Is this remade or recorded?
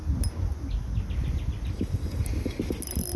recorded